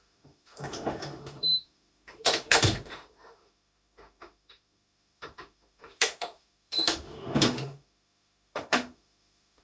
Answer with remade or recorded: remade